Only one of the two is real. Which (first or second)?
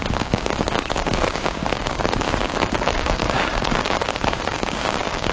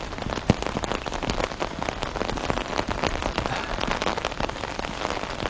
second